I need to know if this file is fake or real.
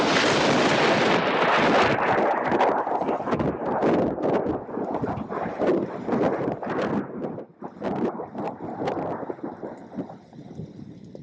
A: real